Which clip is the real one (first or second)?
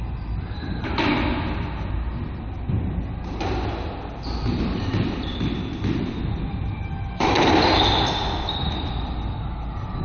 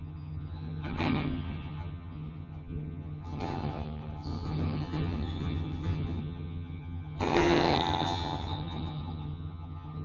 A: first